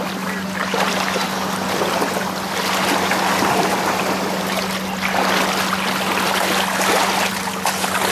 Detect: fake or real real